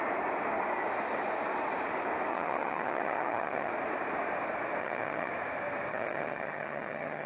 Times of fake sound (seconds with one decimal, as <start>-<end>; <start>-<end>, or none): 2.3-3.7; 4.8-5.3; 5.9-7.3